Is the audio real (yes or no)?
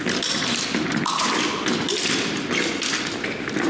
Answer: yes